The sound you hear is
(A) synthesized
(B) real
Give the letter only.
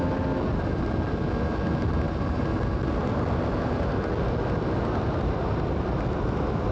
B